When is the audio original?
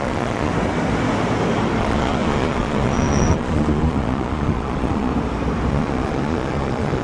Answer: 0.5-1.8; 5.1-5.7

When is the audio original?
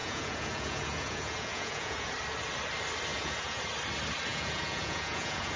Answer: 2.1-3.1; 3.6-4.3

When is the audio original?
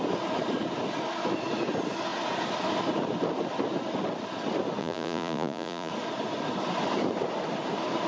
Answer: 0.0-4.8; 5.9-8.1